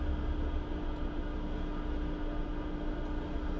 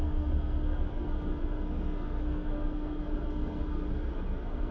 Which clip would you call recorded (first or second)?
first